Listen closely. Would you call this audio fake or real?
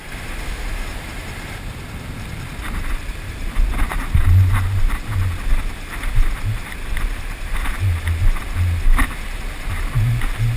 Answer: real